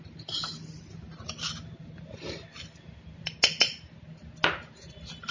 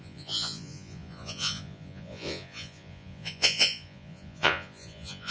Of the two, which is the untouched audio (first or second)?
first